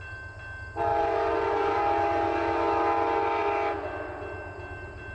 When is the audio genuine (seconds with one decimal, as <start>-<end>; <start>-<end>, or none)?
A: 0.0-0.9; 1.8-5.1